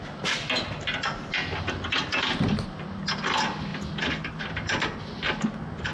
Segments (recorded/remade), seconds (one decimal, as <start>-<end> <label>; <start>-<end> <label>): 0.0-5.9 recorded